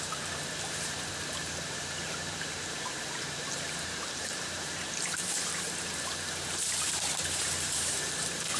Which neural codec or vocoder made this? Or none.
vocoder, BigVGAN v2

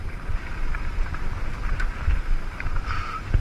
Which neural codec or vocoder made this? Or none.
vocoder, BigVGAN v2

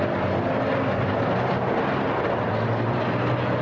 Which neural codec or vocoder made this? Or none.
none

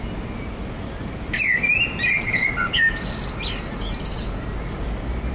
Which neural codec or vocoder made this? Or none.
none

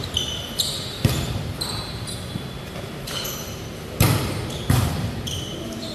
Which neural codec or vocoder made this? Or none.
vocoder, BigVGAN v2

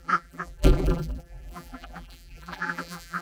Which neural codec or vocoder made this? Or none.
vocoder, BigVGAN v2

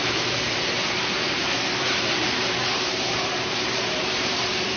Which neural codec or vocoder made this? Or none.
vocoder, BigVGAN v2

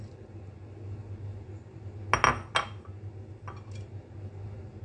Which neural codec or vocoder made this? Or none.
none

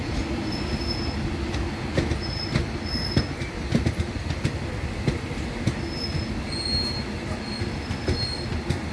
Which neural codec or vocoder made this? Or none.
none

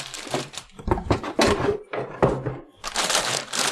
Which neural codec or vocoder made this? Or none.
vocoder, BigVGAN v2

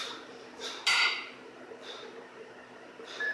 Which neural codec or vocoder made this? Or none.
vocoder, BigVGAN v2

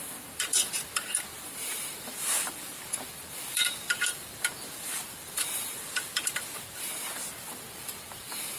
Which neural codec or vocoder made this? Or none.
vocoder, BigVGAN v2